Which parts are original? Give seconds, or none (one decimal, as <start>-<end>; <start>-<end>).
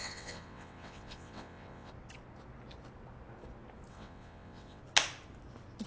1.9-3.9; 4.8-5.9